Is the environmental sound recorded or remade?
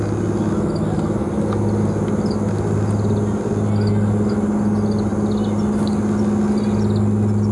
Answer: recorded